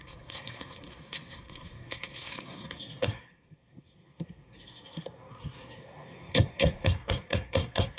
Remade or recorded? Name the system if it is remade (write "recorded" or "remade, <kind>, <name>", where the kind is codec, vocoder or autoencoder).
remade, codec, SNAC